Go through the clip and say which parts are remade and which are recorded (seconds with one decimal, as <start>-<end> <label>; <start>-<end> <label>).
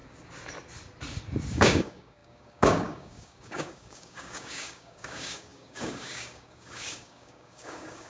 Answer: 0.0-1.5 recorded; 1.5-8.1 remade